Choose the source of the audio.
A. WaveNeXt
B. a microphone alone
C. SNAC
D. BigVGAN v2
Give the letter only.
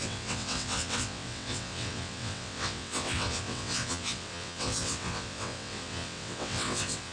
A